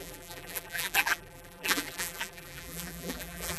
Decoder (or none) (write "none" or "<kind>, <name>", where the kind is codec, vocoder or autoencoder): vocoder, BigVGAN v2